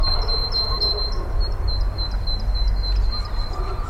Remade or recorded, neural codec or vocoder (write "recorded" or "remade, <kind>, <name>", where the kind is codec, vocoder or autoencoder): recorded